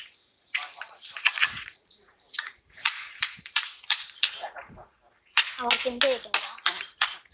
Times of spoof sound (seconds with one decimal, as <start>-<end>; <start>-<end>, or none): 0.0-5.5; 6.4-7.3